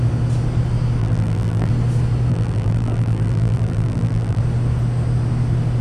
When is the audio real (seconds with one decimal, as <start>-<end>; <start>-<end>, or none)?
0.0-1.0; 1.7-2.3; 4.4-5.8